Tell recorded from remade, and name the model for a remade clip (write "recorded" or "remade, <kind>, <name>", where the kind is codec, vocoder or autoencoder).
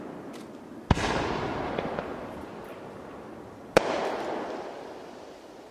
recorded